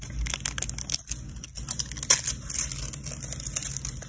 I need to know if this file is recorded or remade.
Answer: recorded